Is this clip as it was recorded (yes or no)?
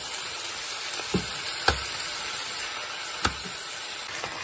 yes